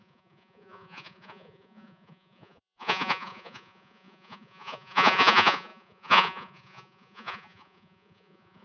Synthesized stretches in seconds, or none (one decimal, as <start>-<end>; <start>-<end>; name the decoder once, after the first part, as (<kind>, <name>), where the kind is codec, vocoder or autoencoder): 0.0-8.6 (vocoder, Vocos)